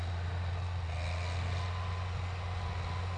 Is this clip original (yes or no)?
yes